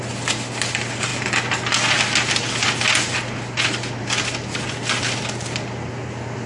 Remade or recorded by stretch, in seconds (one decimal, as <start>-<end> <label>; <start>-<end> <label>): 0.0-6.5 recorded